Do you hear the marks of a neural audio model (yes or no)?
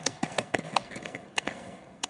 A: yes